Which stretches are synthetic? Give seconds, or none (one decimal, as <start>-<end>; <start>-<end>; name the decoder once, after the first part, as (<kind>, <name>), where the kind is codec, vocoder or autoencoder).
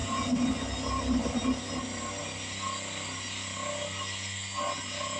none